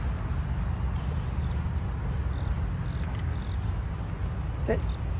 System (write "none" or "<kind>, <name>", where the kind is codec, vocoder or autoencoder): none